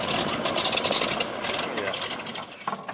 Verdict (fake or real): real